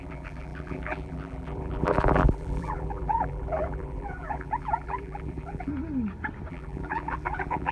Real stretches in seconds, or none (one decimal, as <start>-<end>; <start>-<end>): 5.7-6.5